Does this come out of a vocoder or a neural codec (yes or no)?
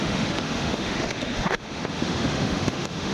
yes